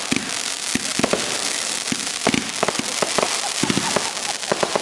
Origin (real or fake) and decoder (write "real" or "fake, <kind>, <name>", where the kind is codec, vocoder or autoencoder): real